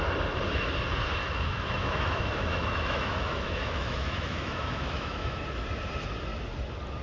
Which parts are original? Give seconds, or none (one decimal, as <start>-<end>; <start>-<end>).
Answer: 0.0-1.2; 5.4-7.0